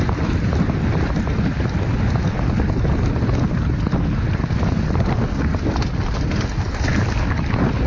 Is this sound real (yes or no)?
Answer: yes